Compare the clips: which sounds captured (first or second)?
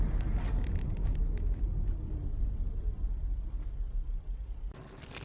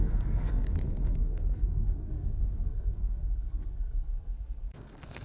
first